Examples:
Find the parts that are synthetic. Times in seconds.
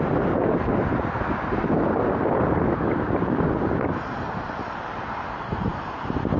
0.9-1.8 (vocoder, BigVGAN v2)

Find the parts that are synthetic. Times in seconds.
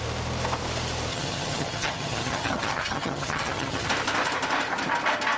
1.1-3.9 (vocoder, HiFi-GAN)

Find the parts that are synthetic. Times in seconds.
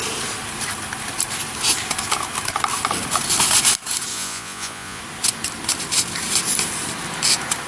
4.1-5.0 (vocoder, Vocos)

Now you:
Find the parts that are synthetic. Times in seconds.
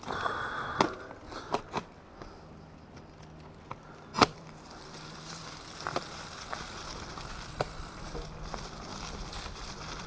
4.1-5.7 (vocoder, BigVGAN v2); 8.9-10.1